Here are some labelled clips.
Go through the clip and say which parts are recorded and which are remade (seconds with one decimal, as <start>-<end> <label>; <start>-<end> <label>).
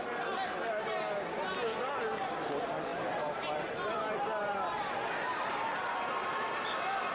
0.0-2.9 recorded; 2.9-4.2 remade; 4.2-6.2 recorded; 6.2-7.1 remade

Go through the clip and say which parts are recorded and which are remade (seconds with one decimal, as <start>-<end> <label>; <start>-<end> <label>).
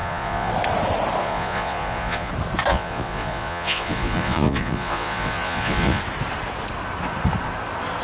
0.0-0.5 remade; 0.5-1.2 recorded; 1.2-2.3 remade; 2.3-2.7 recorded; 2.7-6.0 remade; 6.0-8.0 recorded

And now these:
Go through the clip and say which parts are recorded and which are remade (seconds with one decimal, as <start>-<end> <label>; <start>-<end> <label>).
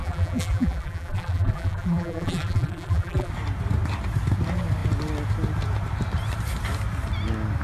0.0-3.3 remade; 3.3-7.6 recorded